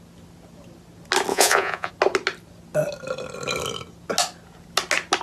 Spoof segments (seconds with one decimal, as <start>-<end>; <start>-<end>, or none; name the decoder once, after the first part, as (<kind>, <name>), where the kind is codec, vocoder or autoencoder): 1.3-1.9 (vocoder, Vocos)